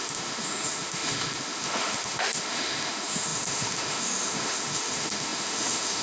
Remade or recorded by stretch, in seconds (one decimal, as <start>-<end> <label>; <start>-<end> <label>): 0.0-6.0 remade